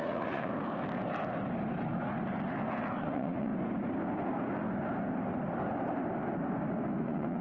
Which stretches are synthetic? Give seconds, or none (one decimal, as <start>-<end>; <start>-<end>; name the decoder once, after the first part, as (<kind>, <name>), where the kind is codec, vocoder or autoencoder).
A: 0.0-0.5 (vocoder, Vocos); 3.0-3.5; 7.0-7.4